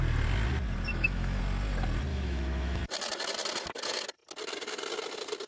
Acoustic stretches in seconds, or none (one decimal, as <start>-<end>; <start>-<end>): 0.0-0.9; 1.4-2.1; 2.8-5.5